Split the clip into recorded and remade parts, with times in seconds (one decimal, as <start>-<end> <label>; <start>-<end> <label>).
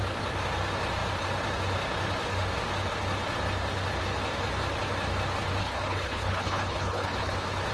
0.0-5.6 recorded; 5.6-7.3 remade; 7.3-7.7 recorded